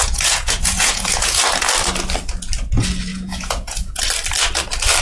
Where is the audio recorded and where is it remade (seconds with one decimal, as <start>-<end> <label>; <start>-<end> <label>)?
0.0-1.4 remade; 1.4-3.1 recorded; 3.1-4.0 remade; 4.0-5.0 recorded